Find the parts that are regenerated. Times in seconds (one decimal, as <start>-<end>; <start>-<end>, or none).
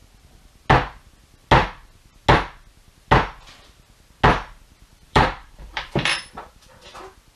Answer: 4.9-6.5